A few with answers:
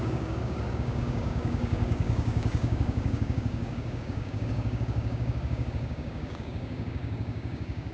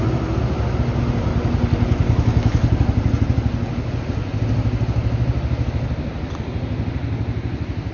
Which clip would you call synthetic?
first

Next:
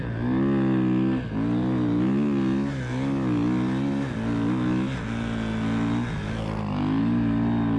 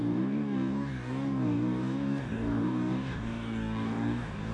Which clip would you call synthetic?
second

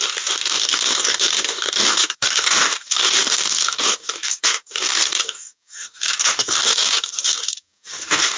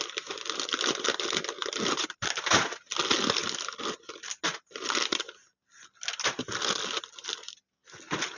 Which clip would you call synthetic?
first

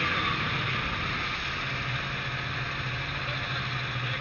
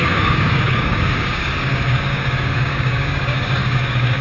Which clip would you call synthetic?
second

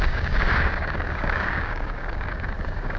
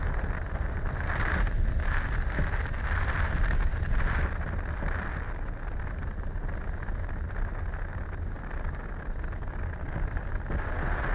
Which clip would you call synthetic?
first